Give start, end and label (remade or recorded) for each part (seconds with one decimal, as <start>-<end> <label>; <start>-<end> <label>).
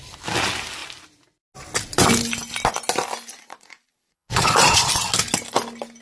0.0-3.3 recorded; 3.3-4.9 remade; 4.9-6.0 recorded